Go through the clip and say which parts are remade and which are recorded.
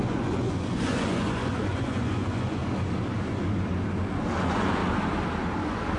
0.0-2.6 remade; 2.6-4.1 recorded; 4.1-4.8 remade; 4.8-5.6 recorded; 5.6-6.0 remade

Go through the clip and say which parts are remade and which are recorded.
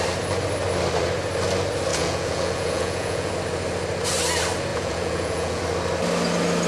0.0-1.9 recorded; 1.9-3.3 remade; 3.3-4.7 recorded; 4.7-5.6 remade; 5.6-6.7 recorded